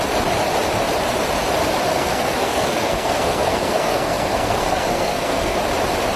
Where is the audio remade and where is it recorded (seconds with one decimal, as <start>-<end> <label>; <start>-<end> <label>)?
0.0-1.9 recorded; 1.9-5.6 remade; 5.6-6.2 recorded